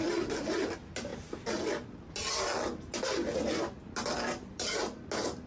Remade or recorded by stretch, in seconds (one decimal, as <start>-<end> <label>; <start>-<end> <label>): 0.0-5.5 recorded